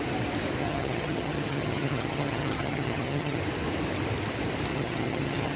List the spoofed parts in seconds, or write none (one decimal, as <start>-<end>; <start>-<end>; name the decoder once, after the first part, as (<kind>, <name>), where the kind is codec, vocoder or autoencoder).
0.6-3.4 (vocoder, HiFi-GAN); 4.7-5.6